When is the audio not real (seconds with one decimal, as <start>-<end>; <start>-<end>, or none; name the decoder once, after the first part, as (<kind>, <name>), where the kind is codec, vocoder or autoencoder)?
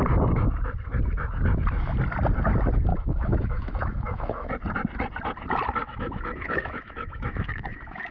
2.9-4.5 (autoencoder, DAC-VAE); 5.8-8.1